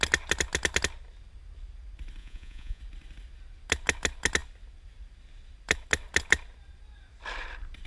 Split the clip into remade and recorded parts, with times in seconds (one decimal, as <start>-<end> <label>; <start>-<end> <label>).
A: 0.0-2.2 recorded; 2.2-2.8 remade; 2.8-7.9 recorded